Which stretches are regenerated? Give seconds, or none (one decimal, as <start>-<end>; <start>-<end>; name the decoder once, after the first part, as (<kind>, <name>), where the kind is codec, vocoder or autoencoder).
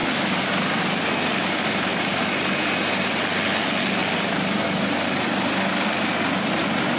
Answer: none